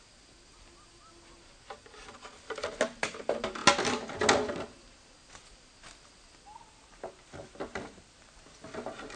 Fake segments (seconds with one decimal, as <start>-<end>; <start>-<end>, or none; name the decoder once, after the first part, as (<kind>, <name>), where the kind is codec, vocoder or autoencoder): none